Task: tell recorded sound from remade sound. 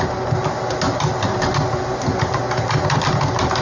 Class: recorded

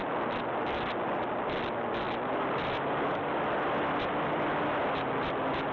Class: recorded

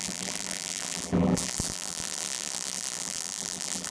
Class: remade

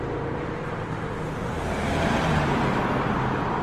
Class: recorded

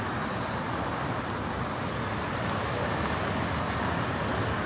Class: recorded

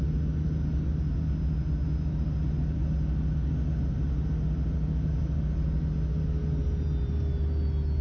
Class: recorded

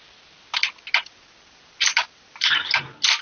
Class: recorded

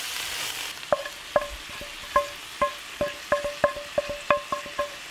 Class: recorded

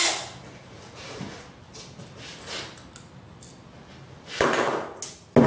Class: recorded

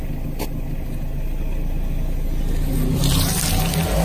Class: recorded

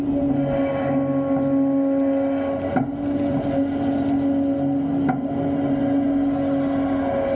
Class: recorded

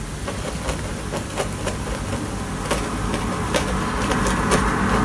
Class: recorded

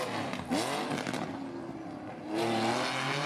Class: recorded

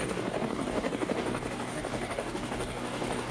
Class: remade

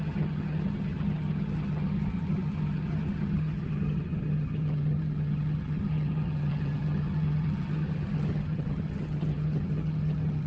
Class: remade